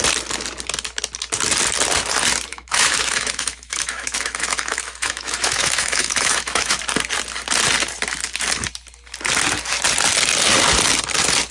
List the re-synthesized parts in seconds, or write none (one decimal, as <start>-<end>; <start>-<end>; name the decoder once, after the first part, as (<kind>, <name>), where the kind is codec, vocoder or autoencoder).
2.5-6.8 (autoencoder, DAC-VAE)